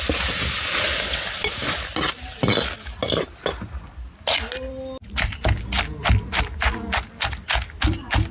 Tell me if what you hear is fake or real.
real